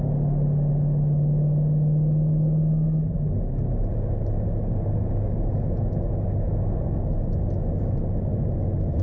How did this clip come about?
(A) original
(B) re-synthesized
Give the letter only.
A